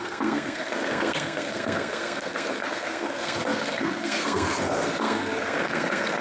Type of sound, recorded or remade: remade